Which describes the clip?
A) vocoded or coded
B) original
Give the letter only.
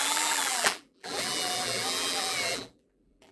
A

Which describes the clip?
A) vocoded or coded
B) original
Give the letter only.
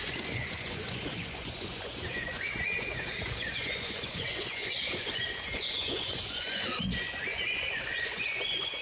A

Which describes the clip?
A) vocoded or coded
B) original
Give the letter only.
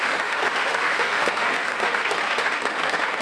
A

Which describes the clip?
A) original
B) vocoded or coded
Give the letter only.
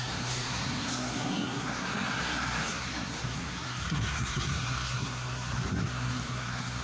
B